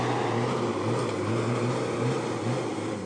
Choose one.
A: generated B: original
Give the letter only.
B